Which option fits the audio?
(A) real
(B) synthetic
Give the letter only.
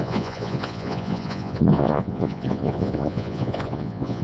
B